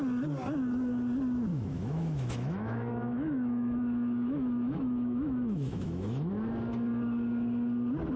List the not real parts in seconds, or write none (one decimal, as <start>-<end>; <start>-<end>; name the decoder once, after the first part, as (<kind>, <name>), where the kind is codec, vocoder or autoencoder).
1.5-6.3 (autoencoder, DAC-VAE)